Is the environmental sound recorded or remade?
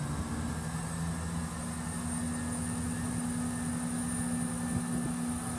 recorded